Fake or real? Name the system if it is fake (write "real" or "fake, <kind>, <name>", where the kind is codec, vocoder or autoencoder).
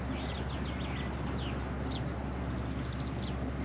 real